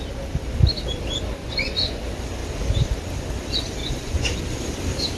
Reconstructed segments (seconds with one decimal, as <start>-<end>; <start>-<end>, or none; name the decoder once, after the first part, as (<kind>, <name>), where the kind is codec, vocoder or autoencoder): 1.4-2.0 (vocoder, Vocos); 3.8-4.4